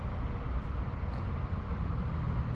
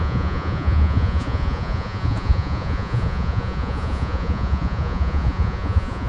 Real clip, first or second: first